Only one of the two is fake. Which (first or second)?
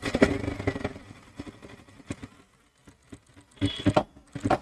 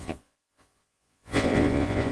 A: second